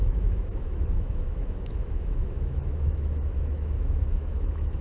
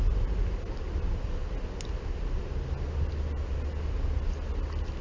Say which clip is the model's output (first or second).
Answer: first